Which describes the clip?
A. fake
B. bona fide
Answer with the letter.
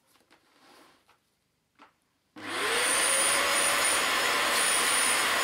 A